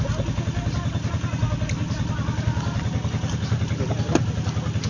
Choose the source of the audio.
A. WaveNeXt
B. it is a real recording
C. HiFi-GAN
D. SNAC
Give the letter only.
B